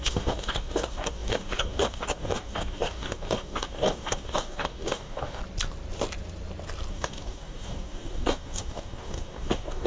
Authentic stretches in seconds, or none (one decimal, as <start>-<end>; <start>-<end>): 5.4-6.9